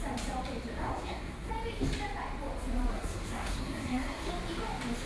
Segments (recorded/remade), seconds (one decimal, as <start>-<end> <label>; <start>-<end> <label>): 0.0-0.8 recorded; 0.8-1.5 remade; 1.5-2.9 recorded; 2.9-4.3 remade; 4.3-5.1 recorded